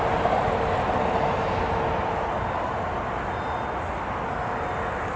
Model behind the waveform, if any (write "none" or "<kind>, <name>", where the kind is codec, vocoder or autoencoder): none